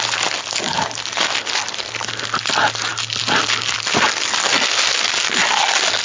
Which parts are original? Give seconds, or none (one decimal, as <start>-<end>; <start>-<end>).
0.0-6.0